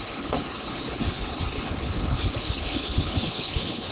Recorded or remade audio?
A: remade